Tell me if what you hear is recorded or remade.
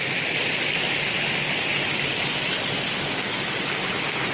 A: recorded